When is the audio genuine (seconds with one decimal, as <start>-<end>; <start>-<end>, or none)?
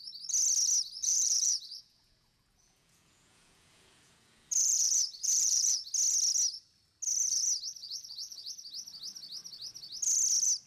0.0-1.0; 5.9-7.8; 8.5-10.7